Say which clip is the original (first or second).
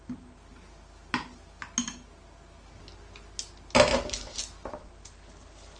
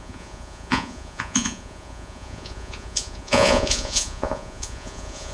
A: first